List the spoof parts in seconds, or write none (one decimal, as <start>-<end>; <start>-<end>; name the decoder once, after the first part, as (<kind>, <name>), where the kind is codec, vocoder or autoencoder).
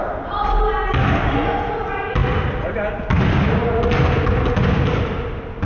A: none